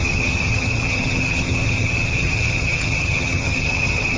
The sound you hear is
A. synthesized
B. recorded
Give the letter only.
A